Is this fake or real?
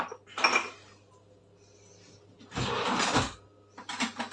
real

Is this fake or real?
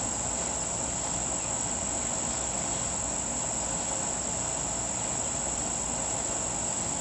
real